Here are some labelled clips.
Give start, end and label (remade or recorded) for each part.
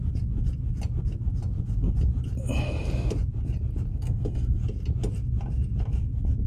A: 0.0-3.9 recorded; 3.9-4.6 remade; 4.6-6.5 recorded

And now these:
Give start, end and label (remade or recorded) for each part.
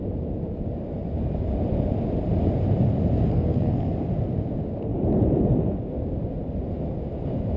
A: 0.0-3.3 recorded; 3.3-3.9 remade; 3.9-7.6 recorded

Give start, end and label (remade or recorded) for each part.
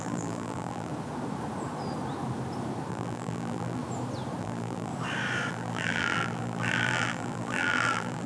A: 0.0-0.9 remade; 0.9-2.9 recorded; 2.9-3.8 remade; 3.8-4.4 recorded; 4.4-4.9 remade; 4.9-5.5 recorded; 5.5-8.3 remade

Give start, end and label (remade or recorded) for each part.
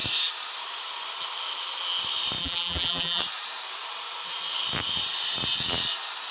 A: 0.0-2.4 recorded; 2.4-3.2 remade; 3.2-6.3 recorded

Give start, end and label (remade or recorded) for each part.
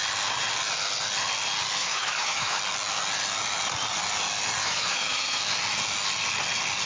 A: 0.0-1.8 recorded; 1.8-2.6 remade; 2.6-4.6 recorded; 4.6-5.4 remade; 5.4-6.9 recorded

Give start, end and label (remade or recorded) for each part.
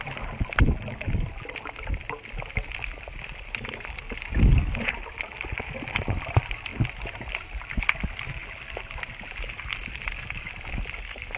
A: 0.0-11.4 recorded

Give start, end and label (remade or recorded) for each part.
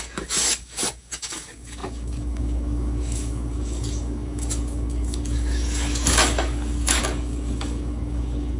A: 0.0-8.6 remade